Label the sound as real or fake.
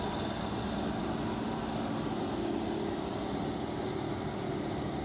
real